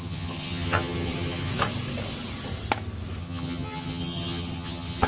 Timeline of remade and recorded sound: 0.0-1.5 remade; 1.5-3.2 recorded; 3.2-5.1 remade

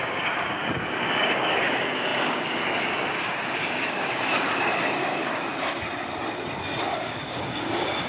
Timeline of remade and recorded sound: 0.0-5.5 remade; 5.5-6.8 recorded; 6.8-8.1 remade

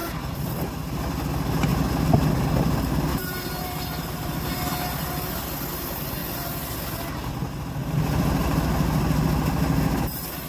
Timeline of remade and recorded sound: 0.0-0.5 remade; 0.5-3.1 recorded; 3.1-4.7 remade; 4.7-10.5 recorded

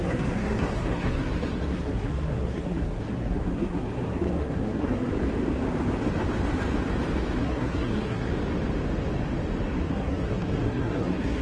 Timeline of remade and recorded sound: 0.0-5.1 remade; 5.1-7.4 recorded; 7.4-8.3 remade; 8.3-9.7 recorded; 9.7-11.4 remade

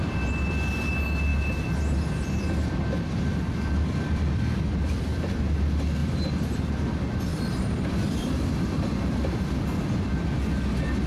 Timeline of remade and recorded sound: 0.0-1.3 recorded; 1.3-5.0 remade; 5.0-6.0 recorded; 6.0-6.6 remade; 6.6-7.3 recorded; 7.3-9.5 remade; 9.5-11.1 recorded

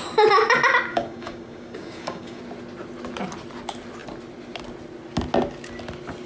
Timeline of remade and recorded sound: 0.0-0.9 recorded; 0.9-2.4 remade; 2.4-6.3 recorded